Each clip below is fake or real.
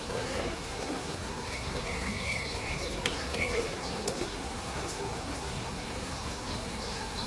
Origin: fake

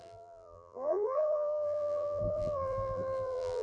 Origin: fake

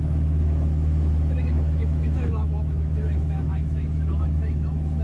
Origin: fake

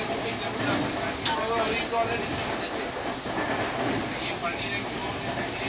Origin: real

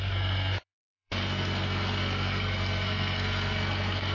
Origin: fake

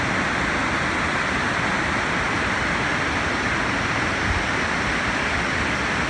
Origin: real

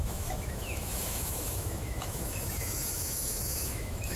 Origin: fake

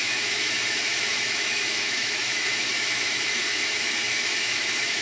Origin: fake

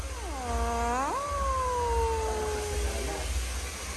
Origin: real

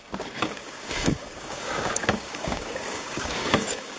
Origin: fake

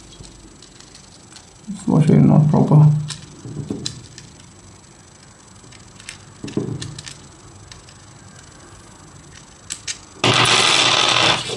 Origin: real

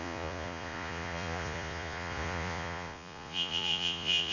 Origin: fake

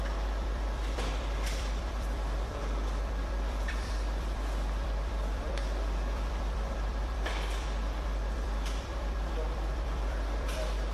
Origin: fake